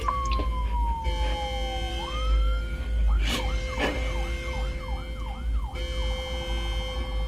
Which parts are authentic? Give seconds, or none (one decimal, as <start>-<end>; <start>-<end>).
0.0-1.9; 4.8-7.3